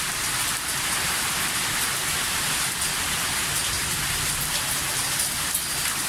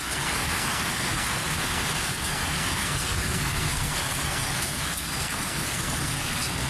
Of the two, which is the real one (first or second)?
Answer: first